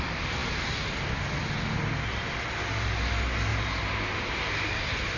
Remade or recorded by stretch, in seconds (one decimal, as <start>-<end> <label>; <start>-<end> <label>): 0.0-3.5 recorded; 3.5-4.3 remade; 4.3-5.2 recorded